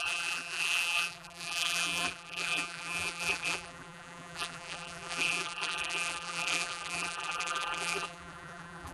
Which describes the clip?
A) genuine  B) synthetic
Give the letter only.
B